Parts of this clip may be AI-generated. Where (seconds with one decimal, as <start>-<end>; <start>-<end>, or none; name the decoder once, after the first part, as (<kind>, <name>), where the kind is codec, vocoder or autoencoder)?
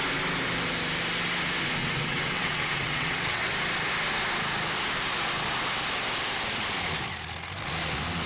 1.8-3.5 (vocoder, WaveNeXt)